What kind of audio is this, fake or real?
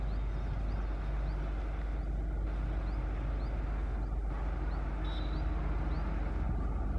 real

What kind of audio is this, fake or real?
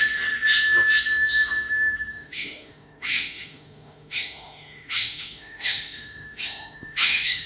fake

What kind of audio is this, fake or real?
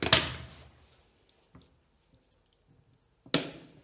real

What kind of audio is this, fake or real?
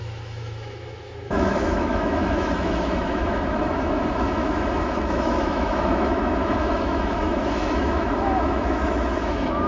fake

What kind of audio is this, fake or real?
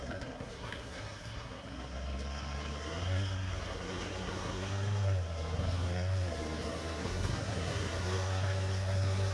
fake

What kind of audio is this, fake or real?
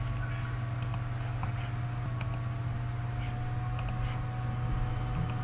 real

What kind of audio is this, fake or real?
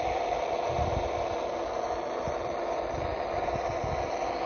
real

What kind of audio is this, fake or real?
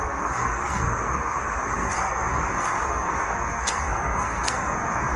fake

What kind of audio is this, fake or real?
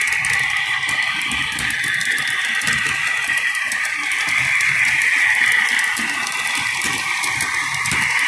fake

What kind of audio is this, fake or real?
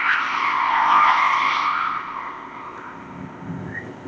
fake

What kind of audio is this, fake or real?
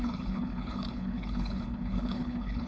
fake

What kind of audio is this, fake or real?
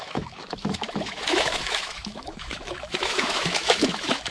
fake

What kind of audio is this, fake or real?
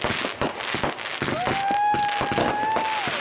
real